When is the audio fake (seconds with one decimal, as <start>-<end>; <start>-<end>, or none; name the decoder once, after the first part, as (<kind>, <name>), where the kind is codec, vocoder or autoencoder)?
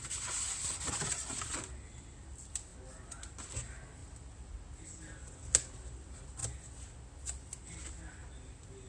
none